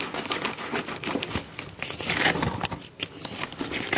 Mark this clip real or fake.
real